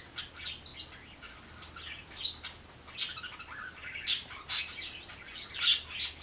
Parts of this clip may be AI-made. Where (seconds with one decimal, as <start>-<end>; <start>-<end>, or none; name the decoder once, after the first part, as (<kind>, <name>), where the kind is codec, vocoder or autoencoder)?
none